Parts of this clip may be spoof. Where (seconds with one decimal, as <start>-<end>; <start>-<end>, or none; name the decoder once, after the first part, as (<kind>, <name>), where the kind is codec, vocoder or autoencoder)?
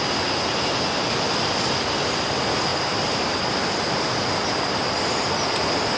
none